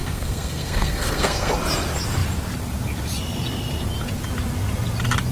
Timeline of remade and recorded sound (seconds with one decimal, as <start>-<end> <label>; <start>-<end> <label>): 0.0-1.5 remade; 1.5-5.3 recorded